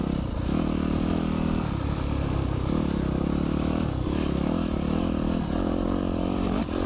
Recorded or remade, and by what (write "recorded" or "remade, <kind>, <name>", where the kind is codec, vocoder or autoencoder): remade, vocoder, BigVGAN v2